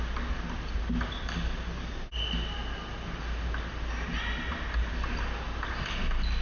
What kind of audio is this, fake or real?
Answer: real